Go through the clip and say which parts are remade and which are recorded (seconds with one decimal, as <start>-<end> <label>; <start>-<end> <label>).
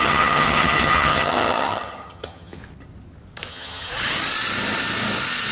0.0-2.6 remade; 2.6-3.5 recorded; 3.5-3.9 remade; 3.9-5.5 recorded